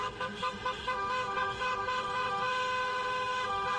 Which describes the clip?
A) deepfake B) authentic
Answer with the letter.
A